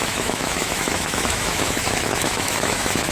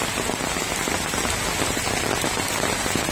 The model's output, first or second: first